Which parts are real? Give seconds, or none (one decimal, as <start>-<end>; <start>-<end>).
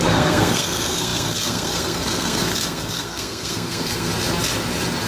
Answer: 4.1-5.1